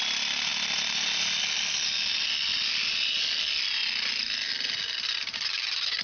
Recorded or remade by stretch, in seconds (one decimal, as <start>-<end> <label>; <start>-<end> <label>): 0.0-6.0 recorded